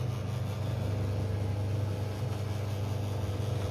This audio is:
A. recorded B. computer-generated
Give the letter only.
A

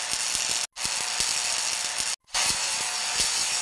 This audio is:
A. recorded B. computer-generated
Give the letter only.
A